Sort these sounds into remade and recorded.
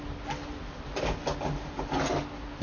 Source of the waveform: recorded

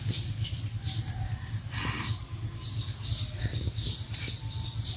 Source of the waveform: recorded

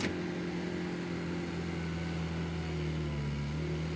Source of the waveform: recorded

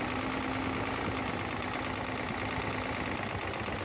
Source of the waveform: recorded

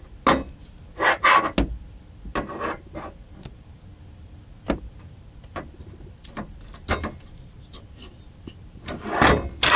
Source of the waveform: recorded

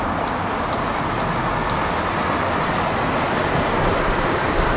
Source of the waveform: recorded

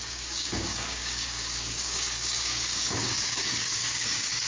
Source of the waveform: remade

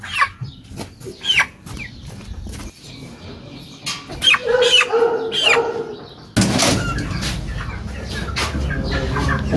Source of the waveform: recorded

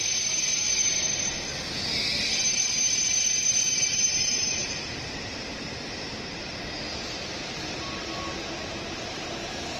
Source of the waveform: recorded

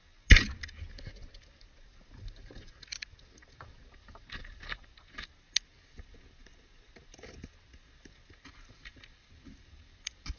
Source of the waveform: recorded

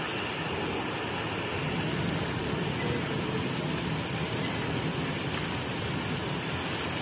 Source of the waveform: recorded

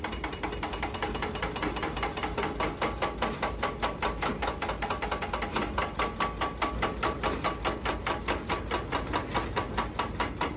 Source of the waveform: recorded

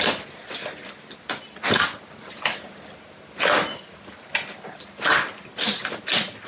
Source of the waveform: recorded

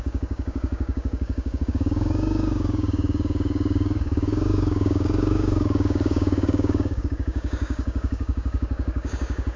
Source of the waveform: remade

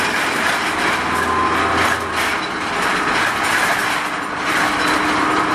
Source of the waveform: recorded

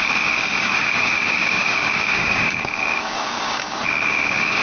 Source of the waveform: remade